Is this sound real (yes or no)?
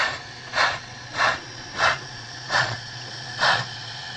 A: no